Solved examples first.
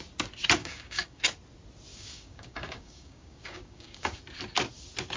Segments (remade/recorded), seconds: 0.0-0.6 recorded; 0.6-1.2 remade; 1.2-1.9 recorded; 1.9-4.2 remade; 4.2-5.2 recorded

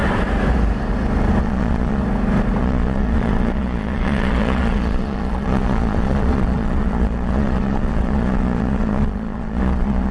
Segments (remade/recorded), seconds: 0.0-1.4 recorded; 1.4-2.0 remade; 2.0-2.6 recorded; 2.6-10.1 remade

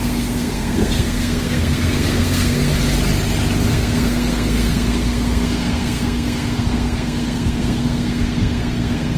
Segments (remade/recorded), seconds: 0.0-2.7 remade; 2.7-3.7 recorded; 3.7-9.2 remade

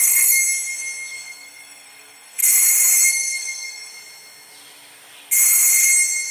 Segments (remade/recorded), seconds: 0.0-0.4 remade; 0.4-1.1 recorded; 1.1-2.4 remade; 2.4-3.1 recorded; 3.1-3.9 remade; 3.9-6.3 recorded

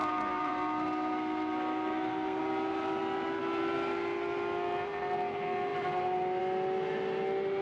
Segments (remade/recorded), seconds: 0.0-2.4 remade; 2.4-7.6 recorded

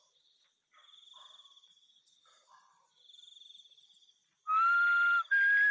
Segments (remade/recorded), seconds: 0.0-5.7 recorded

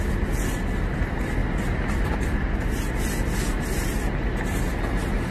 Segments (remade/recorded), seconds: 0.0-5.3 recorded

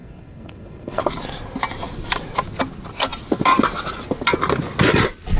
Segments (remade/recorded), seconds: 0.0-1.0 remade; 1.0-5.4 recorded